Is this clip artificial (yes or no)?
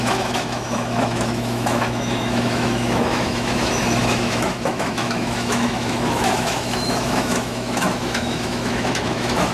yes